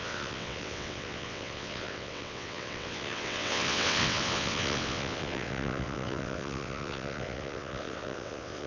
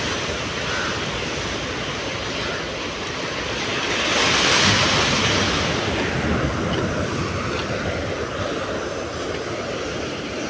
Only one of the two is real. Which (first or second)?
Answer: second